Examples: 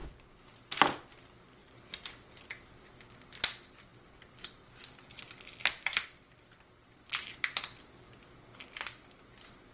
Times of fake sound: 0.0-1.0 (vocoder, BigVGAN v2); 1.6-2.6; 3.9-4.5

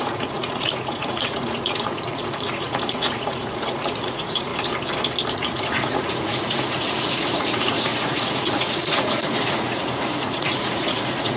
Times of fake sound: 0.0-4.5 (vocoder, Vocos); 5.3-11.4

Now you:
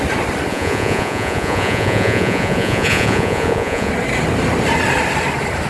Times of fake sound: 0.5-3.9 (vocoder, Vocos)

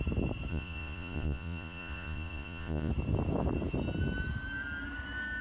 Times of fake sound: 0.5-2.9 (vocoder, Vocos)

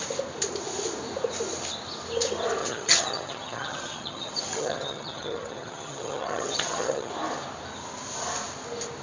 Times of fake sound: 2.6-7.1 (vocoder, HiFi-GAN)

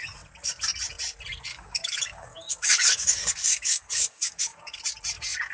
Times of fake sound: 1.5-4.8 (codec, DAC)

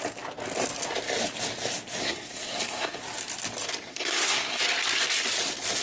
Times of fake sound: 2.0-3.0 (codec, SNAC); 3.9-4.6

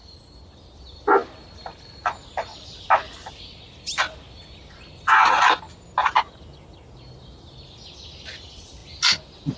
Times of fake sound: none